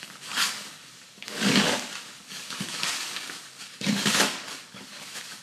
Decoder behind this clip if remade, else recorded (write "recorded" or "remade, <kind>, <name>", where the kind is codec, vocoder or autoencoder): remade, codec, DAC